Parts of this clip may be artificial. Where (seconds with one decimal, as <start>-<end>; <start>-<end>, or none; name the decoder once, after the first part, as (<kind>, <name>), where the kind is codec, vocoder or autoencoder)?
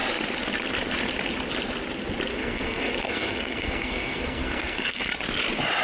2.3-5.1 (codec, SNAC)